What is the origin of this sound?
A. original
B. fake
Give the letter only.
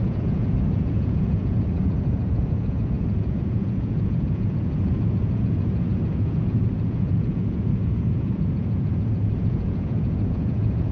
B